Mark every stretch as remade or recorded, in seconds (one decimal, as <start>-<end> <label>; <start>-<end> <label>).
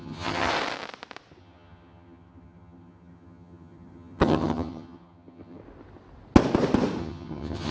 0.0-0.5 remade; 0.5-1.4 recorded; 1.4-5.6 remade; 5.6-7.0 recorded; 7.0-7.7 remade